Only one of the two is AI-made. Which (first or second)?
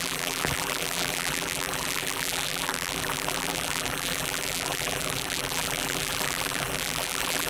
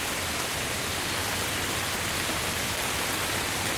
first